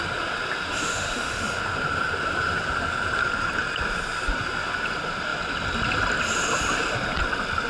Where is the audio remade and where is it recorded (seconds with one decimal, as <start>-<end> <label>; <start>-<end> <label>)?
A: 0.0-0.8 recorded; 0.8-1.6 remade; 1.6-7.7 recorded